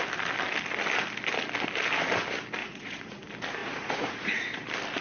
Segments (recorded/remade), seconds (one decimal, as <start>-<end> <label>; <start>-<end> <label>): 0.0-2.6 recorded; 2.6-3.2 remade; 3.2-3.6 recorded; 3.6-4.5 remade; 4.5-5.0 recorded